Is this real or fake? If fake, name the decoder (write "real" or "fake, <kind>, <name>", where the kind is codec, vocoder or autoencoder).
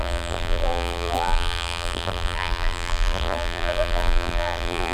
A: fake, vocoder, BigVGAN v2